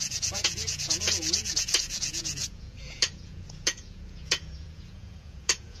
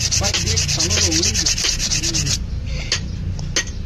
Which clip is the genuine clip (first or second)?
second